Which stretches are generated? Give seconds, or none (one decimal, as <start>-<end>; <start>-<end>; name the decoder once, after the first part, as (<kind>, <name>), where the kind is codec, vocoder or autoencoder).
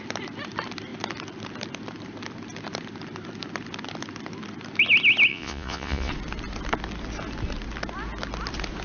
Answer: 5.3-6.1 (vocoder, Vocos)